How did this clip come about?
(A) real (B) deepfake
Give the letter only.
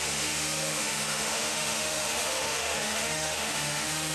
B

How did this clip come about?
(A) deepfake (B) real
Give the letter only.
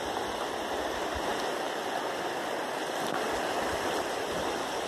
B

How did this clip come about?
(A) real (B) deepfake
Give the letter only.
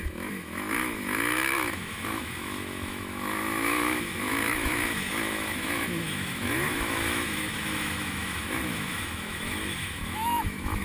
B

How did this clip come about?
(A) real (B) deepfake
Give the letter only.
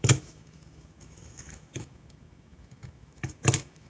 B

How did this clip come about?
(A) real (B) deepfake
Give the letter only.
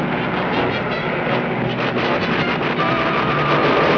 A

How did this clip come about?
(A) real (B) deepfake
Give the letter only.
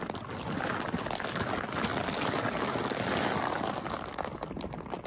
A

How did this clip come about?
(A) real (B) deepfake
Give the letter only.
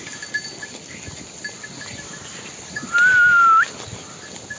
A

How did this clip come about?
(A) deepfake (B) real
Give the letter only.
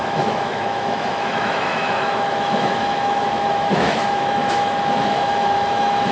A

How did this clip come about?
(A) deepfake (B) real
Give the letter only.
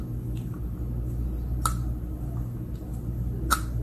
B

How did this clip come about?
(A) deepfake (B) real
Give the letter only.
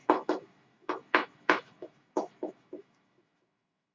A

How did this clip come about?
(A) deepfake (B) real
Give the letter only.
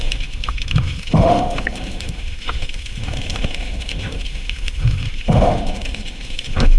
A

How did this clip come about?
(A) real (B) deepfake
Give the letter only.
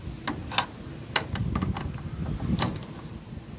A